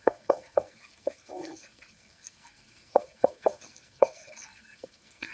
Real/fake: fake